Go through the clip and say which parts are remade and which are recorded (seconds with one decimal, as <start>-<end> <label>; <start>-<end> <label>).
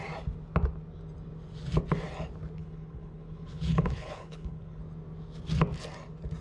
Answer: 0.0-2.6 recorded; 2.6-4.8 remade; 4.8-6.4 recorded